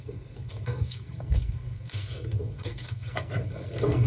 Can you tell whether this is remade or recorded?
remade